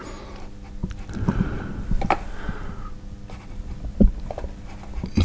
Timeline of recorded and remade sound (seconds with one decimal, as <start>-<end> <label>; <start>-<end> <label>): 0.0-5.2 recorded